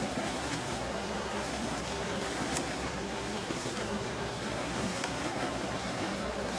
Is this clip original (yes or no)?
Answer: no